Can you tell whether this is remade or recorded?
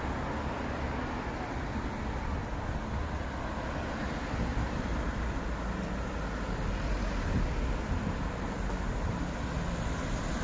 recorded